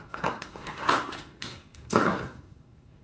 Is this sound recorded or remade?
remade